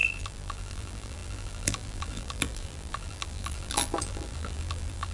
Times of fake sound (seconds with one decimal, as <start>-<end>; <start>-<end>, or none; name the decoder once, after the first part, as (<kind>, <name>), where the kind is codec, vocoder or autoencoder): 0.0-5.1 (vocoder, BigVGAN v2)